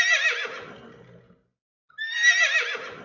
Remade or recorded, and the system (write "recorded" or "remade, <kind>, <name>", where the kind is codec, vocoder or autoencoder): recorded